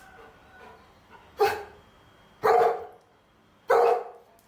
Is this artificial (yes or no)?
no